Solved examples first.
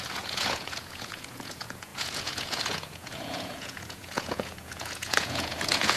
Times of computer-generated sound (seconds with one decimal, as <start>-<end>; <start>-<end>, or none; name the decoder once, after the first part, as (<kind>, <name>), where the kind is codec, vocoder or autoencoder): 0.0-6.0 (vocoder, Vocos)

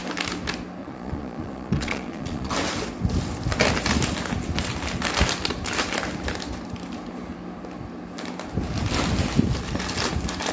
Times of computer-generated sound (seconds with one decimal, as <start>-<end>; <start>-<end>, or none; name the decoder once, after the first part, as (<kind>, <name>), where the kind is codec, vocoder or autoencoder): 0.8-2.5 (vocoder, Vocos)

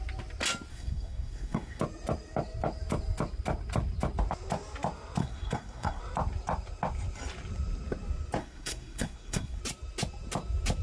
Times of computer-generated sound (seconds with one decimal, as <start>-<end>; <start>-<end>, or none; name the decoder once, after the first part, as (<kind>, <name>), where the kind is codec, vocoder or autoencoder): 0.7-1.8 (codec, SNAC); 5.2-6.0; 8.4-9.6

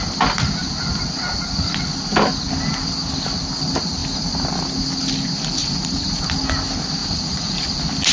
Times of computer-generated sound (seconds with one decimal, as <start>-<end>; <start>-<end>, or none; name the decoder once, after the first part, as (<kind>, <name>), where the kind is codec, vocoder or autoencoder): 5.6-6.2 (vocoder, Vocos); 7.0-7.6

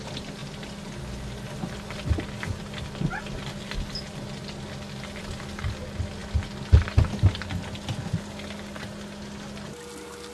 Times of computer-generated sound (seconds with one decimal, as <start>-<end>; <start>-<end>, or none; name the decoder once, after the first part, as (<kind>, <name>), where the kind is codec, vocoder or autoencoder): none